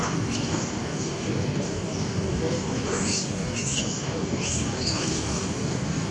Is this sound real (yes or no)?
no